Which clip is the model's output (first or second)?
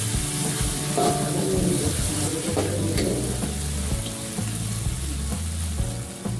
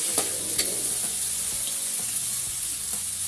second